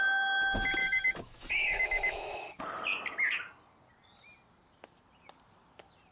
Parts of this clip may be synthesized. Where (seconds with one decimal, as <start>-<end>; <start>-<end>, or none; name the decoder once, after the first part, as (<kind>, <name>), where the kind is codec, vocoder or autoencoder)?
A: 0.8-2.6 (autoencoder, DAC-VAE)